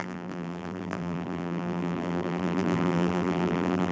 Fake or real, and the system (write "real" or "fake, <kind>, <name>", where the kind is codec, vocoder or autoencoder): fake, vocoder, BigVGAN v2